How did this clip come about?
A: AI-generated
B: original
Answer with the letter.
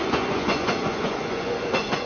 A